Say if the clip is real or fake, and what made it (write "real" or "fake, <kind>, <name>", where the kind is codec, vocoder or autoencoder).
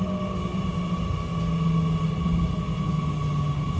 real